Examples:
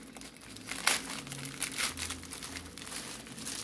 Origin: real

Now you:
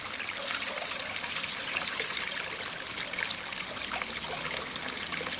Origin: fake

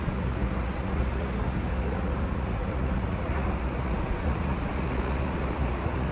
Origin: fake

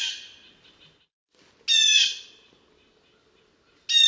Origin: real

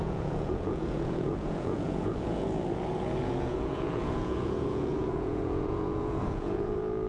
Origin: fake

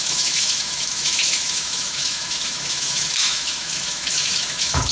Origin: fake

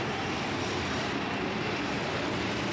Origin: real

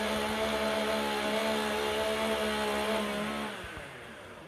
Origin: real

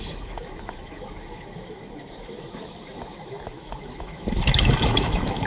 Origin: fake